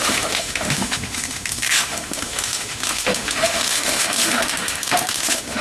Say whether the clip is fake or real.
fake